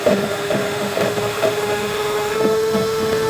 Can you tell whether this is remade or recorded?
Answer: remade